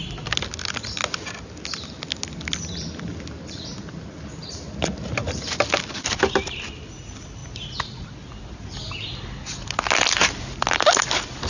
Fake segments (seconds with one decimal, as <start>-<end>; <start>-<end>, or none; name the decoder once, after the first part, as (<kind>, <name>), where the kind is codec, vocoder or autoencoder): none